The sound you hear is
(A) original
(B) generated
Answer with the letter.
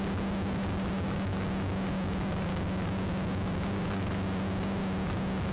A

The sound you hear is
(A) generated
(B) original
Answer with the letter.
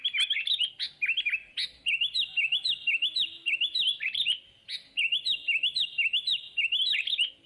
B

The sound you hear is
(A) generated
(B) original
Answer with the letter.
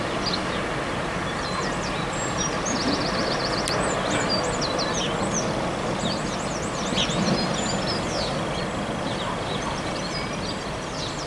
B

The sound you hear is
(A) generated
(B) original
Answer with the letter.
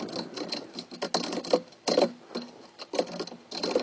B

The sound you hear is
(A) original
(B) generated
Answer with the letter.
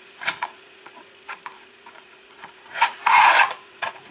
B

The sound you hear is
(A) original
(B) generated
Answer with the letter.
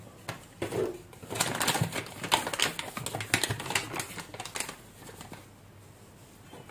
A